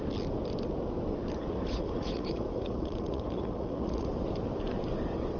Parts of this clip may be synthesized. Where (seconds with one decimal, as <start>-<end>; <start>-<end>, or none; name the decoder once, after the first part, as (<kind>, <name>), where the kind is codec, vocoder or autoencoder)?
1.4-4.1 (vocoder, Vocos)